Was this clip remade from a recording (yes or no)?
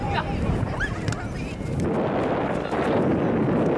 no